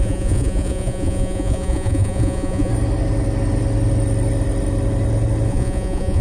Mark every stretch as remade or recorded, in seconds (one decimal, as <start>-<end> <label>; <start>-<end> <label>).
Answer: 0.0-2.7 remade; 2.7-5.5 recorded; 5.5-6.2 remade